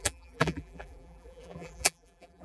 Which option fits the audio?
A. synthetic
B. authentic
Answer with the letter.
A